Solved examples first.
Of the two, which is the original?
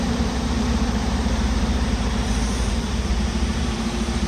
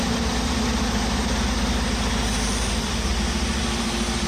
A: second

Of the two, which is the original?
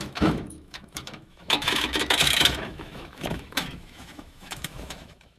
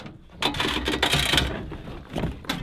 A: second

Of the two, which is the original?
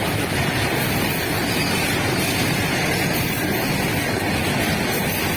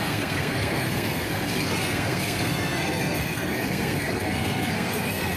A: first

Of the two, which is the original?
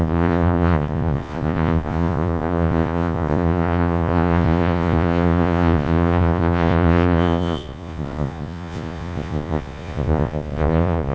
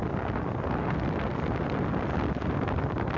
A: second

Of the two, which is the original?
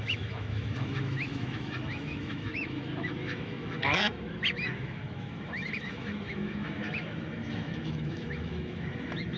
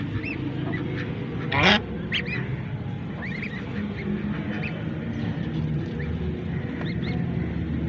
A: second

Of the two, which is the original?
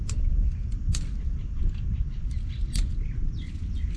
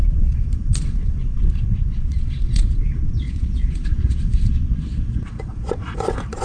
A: first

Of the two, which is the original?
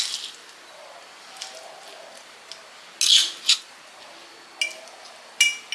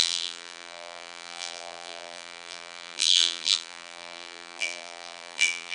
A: first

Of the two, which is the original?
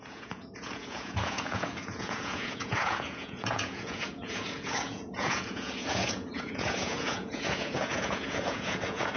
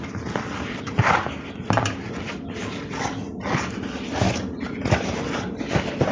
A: second